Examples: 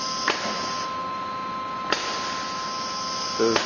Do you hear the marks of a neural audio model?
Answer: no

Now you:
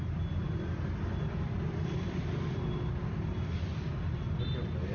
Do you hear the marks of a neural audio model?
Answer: no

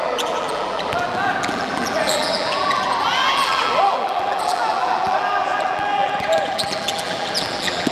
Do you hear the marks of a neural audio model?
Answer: yes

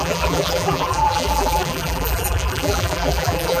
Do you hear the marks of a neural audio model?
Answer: yes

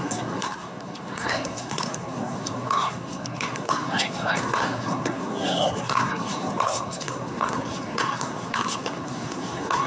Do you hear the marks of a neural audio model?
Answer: yes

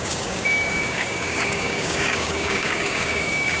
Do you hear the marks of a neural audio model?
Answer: yes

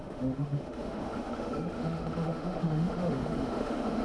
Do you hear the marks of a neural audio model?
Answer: yes